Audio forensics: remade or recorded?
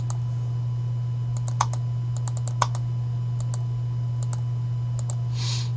recorded